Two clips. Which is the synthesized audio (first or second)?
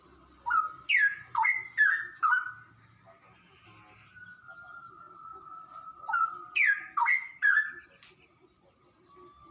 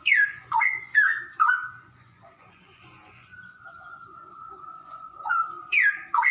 second